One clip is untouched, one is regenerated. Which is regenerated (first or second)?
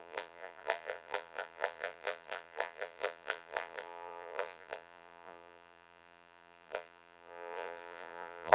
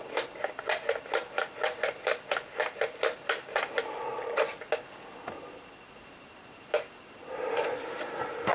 first